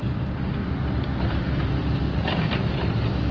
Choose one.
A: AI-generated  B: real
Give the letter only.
B